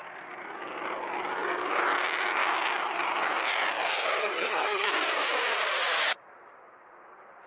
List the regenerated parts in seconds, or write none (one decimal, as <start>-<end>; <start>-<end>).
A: 4.2-4.9

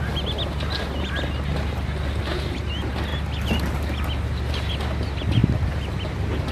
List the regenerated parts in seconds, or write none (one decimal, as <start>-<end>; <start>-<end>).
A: none

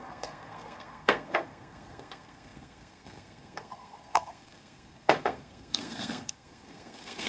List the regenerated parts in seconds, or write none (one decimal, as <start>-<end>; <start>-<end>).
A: 0.0-7.3